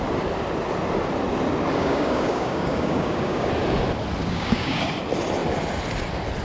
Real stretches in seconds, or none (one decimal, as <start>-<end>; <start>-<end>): 0.0-1.8; 3.5-4.2; 4.8-6.4